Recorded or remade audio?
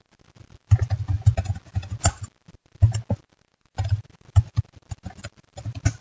recorded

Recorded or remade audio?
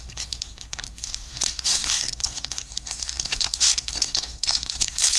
remade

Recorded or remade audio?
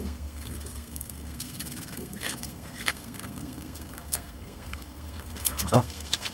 remade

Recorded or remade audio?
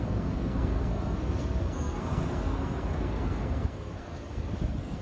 remade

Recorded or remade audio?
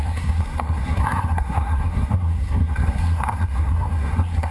remade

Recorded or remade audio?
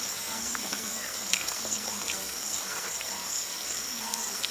remade